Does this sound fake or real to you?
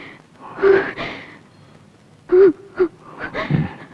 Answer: real